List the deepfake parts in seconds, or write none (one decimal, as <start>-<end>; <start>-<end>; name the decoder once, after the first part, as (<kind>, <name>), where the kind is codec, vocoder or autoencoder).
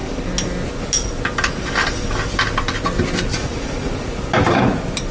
3.3-3.9 (vocoder, Vocos)